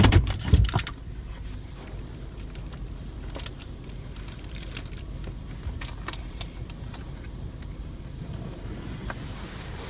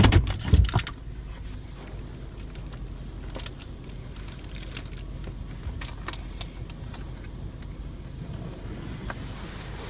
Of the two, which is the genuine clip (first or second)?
second